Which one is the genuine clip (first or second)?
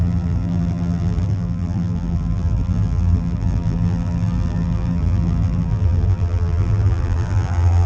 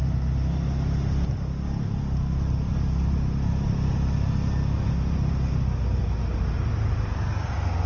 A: second